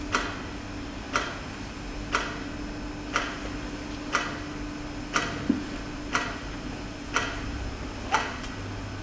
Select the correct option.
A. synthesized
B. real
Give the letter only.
B